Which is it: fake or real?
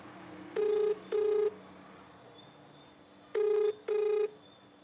real